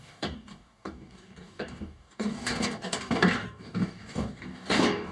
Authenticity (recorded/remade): remade